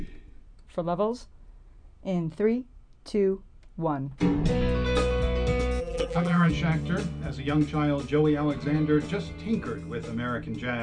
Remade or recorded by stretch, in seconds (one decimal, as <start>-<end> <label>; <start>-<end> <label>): 0.0-5.8 recorded; 5.8-6.5 remade; 6.5-10.8 recorded